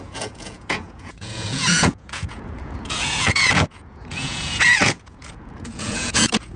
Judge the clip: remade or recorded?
remade